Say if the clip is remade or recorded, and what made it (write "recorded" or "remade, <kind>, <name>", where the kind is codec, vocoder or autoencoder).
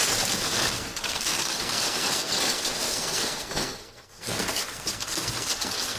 remade, codec, SNAC